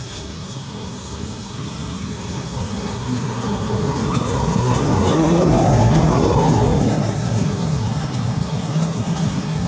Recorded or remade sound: remade